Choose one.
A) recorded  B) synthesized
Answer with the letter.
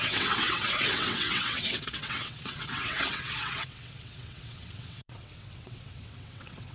B